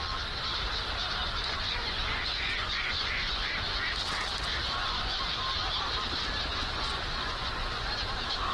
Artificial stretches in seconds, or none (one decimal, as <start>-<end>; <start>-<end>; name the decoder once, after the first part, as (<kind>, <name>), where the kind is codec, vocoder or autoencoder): 1.2-3.5 (vocoder, Vocos); 4.6-5.2; 6.5-7.9